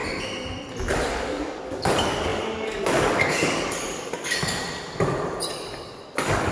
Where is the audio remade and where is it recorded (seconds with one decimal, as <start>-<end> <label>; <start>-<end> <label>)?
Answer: 0.0-1.1 recorded; 1.1-4.6 remade; 4.6-5.5 recorded; 5.5-6.5 remade